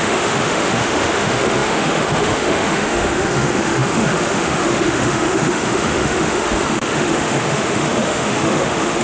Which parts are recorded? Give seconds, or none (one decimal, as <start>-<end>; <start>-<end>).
none